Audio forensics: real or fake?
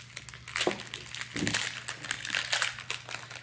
real